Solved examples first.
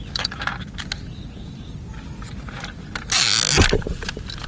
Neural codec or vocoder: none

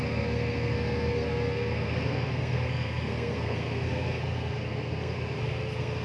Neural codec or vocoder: codec, SNAC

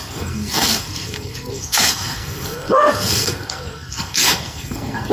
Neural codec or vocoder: codec, SNAC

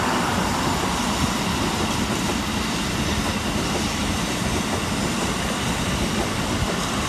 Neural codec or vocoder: none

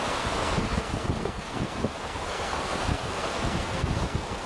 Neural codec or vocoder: codec, SNAC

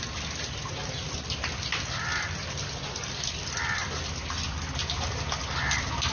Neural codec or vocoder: none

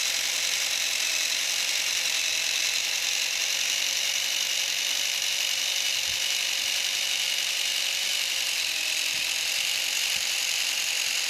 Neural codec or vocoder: none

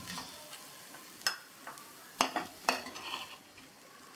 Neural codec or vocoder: none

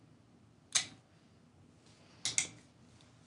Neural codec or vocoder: none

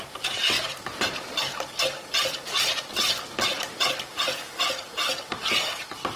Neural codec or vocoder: none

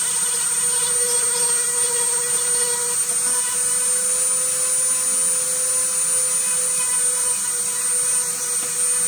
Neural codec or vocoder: none